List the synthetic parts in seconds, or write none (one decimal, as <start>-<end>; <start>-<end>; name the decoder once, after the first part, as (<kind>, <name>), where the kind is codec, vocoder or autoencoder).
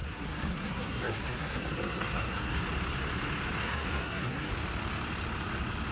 0.0-2.6 (codec, SNAC); 3.6-4.5